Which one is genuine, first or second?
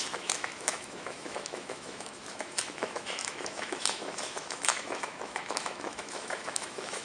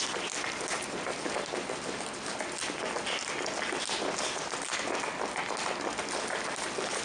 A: second